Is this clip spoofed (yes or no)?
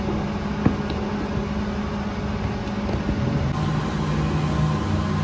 no